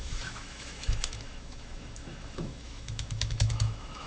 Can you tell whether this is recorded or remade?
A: remade